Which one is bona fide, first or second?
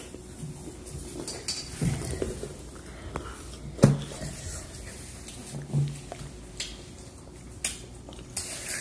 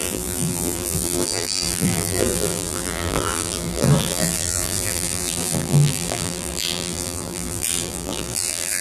first